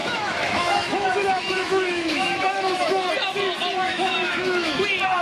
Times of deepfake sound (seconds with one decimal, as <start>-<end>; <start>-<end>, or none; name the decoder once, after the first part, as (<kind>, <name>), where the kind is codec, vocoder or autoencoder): 0.0-3.1 (autoencoder, DAC-VAE); 3.8-4.8